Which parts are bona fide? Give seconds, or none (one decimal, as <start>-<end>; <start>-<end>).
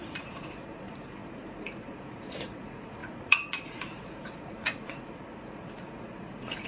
none